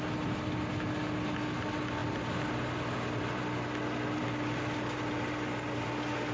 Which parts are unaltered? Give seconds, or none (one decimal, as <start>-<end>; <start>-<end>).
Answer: 0.0-6.3

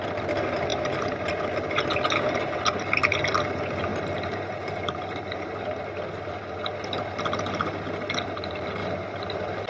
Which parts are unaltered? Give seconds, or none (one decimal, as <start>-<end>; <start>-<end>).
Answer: 0.0-0.7; 1.4-3.9; 6.0-8.8